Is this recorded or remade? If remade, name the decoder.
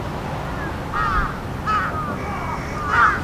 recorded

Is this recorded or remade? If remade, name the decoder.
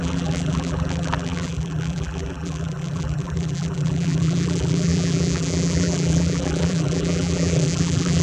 remade, vocoder, BigVGAN v2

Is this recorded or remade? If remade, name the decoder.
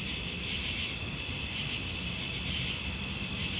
recorded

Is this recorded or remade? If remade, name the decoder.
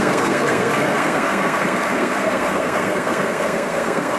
remade, codec, SNAC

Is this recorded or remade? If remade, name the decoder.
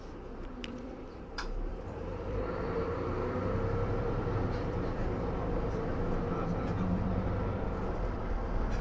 remade, vocoder, BigVGAN v2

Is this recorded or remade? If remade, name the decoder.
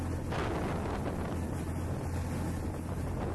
recorded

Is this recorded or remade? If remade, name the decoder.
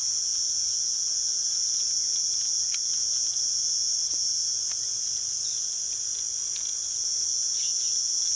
remade, vocoder, Vocos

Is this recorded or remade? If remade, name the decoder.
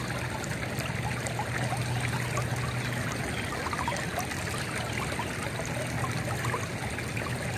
recorded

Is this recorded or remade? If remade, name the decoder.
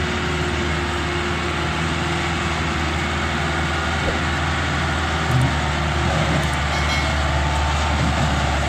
recorded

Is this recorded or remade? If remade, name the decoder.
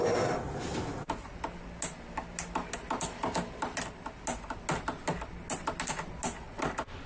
recorded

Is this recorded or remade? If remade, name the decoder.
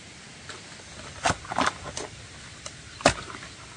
recorded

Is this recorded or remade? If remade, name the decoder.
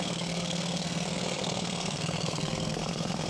remade, codec, SNAC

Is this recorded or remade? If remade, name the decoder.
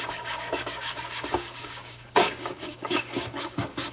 remade, codec, DAC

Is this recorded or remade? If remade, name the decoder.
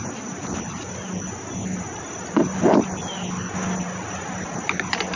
recorded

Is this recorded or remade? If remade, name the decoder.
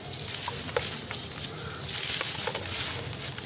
recorded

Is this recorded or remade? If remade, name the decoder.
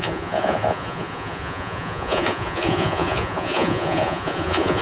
remade, vocoder, Vocos